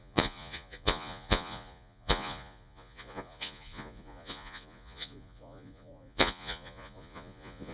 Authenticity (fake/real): fake